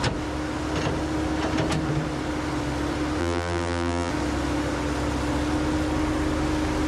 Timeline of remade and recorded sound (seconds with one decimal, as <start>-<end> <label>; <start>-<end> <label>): 0.0-3.2 recorded; 3.2-4.1 remade; 4.1-6.9 recorded